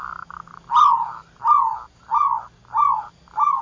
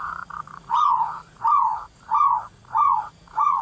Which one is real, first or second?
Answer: first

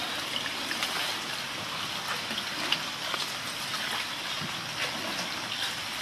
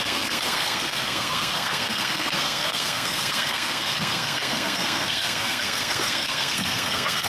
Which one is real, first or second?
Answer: first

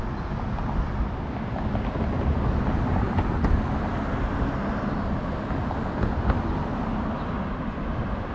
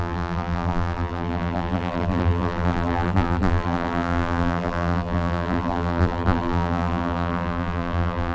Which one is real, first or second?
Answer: first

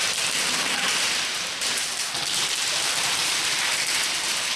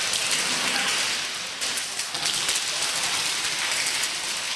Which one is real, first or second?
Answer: second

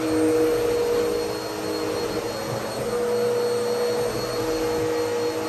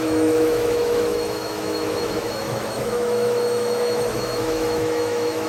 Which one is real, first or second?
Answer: first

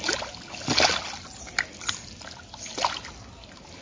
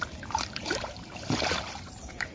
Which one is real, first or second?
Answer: first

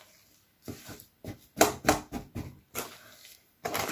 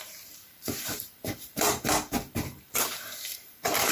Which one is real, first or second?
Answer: first